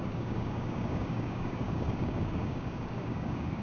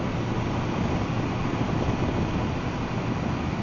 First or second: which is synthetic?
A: first